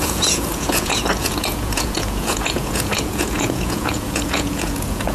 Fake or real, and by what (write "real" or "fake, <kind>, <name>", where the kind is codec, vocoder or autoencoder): fake, vocoder, Vocos